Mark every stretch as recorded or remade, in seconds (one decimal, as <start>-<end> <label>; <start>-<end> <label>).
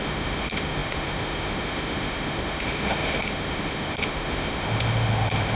0.0-5.5 remade